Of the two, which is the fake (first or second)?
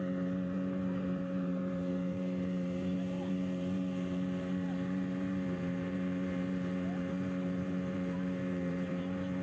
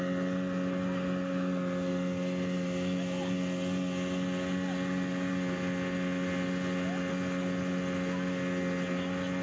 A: first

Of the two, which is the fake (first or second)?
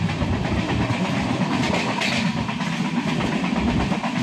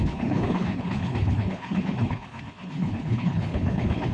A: second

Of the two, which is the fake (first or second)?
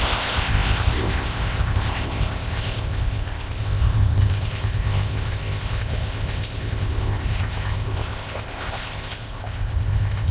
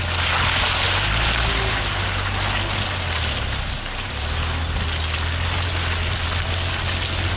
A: first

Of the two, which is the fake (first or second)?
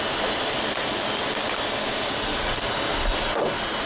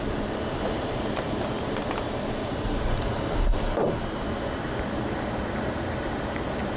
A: second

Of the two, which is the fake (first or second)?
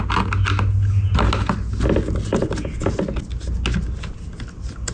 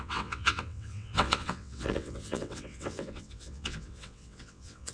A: second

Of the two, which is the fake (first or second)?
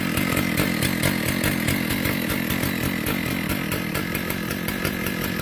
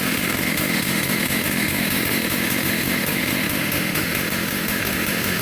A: second